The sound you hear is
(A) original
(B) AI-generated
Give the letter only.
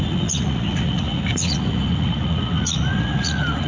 B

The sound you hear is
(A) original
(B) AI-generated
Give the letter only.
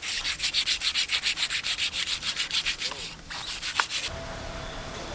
A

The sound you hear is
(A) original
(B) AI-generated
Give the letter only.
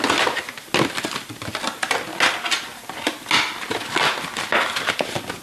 A